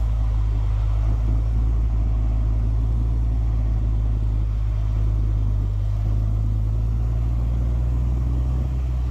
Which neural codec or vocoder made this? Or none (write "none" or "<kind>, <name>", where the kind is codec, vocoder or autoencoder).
none